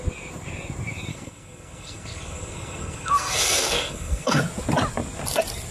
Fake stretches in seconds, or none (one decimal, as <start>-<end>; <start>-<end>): 1.1-4.4